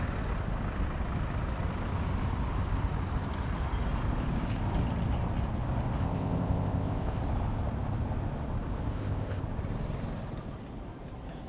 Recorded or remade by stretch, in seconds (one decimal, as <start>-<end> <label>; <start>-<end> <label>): 0.0-6.0 recorded; 6.0-7.2 remade; 7.2-8.9 recorded; 8.9-9.4 remade; 9.4-11.5 recorded